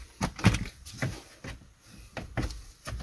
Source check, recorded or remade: remade